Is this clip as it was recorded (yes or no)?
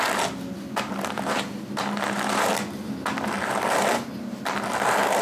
yes